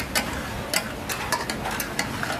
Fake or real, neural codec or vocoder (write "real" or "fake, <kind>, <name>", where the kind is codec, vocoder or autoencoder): real